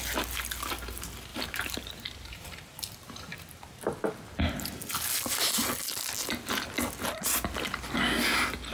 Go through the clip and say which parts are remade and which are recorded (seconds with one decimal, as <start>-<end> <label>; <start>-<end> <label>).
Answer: 0.0-1.3 recorded; 1.3-4.7 remade; 4.7-8.7 recorded

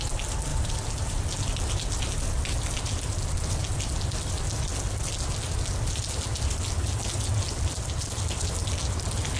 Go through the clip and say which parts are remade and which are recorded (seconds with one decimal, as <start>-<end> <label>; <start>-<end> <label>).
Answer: 0.0-0.5 recorded; 0.5-1.2 remade; 1.2-9.4 recorded

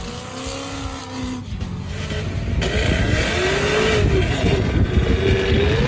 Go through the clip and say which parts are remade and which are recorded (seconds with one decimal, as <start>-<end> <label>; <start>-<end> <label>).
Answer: 0.0-5.9 recorded

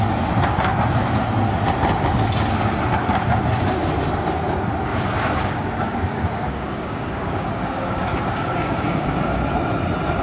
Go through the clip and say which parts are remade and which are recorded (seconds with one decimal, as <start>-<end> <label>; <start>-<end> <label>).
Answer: 0.0-4.9 recorded; 4.9-9.2 remade; 9.2-10.2 recorded